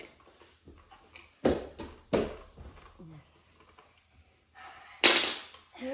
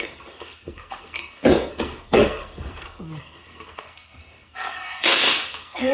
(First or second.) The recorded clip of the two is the first